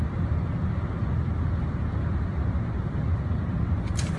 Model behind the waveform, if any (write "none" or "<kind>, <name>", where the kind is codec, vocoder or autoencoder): none